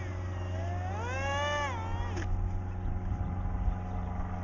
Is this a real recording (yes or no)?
yes